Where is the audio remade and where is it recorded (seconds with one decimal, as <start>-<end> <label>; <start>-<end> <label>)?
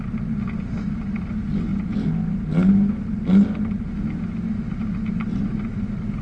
0.0-6.2 recorded